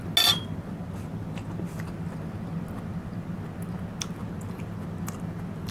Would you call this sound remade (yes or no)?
no